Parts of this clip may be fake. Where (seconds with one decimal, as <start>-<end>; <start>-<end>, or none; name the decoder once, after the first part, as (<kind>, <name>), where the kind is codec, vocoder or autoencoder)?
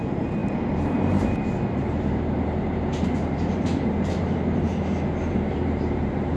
0.0-4.7 (vocoder, BigVGAN v2); 5.3-6.4